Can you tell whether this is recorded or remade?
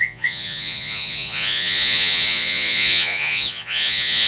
remade